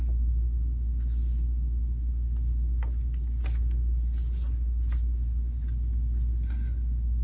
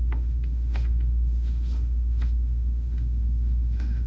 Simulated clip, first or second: second